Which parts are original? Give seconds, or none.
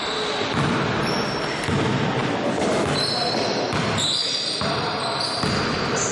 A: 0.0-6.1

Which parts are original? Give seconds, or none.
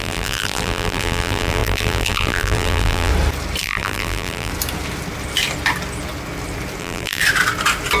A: 3.1-3.6; 4.5-6.8; 7.2-8.0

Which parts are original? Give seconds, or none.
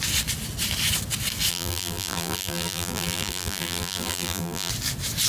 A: 0.0-1.5; 4.7-5.3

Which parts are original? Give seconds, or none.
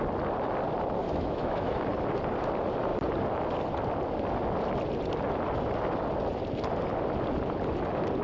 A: 0.0-1.0; 1.9-8.2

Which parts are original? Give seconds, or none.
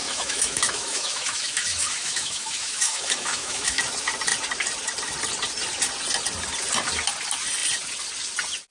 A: 3.8-8.7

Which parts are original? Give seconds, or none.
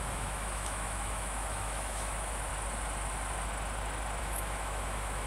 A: 2.5-4.2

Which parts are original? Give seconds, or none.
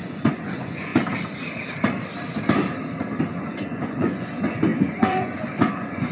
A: 0.9-3.2